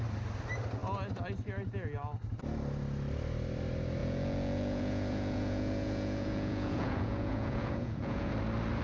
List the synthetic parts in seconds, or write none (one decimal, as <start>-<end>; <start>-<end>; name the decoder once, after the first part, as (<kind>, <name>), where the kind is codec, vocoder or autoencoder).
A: 4.0-8.3 (vocoder, Vocos)